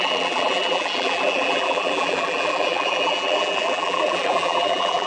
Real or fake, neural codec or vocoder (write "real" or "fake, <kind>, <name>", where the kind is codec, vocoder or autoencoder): fake, vocoder, BigVGAN v2